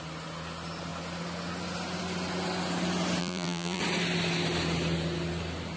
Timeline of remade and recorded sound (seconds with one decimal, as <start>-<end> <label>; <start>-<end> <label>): 0.0-3.2 recorded; 3.2-3.8 remade; 3.8-5.8 recorded